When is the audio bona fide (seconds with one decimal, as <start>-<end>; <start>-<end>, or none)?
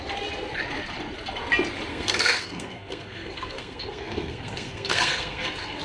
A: 0.0-1.9